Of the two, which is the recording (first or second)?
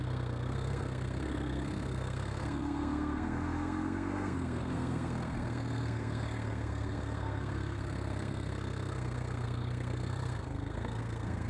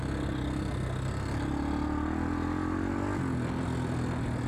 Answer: second